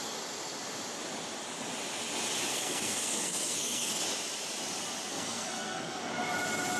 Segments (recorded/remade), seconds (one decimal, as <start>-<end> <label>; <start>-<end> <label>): 0.0-2.5 recorded; 2.5-3.9 remade; 3.9-5.1 recorded; 5.1-6.1 remade; 6.1-6.8 recorded